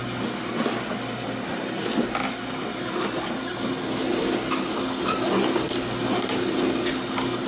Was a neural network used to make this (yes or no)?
no